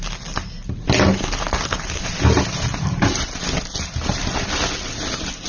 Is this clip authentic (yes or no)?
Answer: yes